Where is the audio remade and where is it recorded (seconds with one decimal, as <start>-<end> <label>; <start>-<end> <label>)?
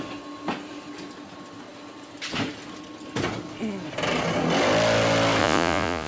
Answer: 0.0-5.4 recorded; 5.4-6.1 remade